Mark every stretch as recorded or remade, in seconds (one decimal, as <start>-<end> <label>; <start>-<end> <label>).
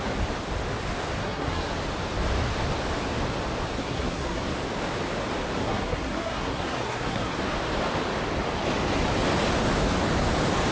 0.0-1.2 recorded; 1.2-1.7 remade; 1.7-3.8 recorded; 3.8-4.4 remade; 4.4-5.6 recorded; 5.6-7.4 remade; 7.4-10.7 recorded